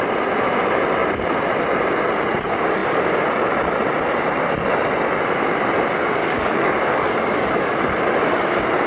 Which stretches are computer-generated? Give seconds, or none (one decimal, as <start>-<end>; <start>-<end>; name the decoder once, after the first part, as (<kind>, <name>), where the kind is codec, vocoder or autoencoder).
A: 6.2-7.8 (codec, DAC)